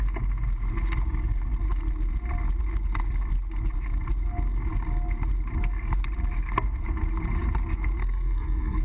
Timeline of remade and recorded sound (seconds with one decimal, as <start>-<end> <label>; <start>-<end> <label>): 0.0-8.0 recorded; 8.0-8.8 remade